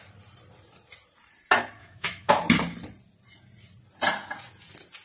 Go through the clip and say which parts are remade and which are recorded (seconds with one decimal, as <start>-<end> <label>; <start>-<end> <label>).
0.0-1.8 recorded; 1.8-2.3 remade; 2.3-5.0 recorded